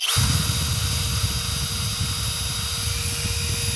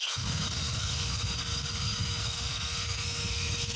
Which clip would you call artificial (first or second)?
second